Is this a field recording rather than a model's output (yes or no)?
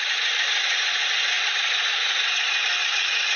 yes